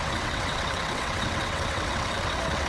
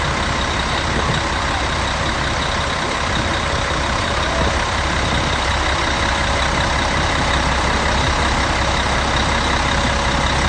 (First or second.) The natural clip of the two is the second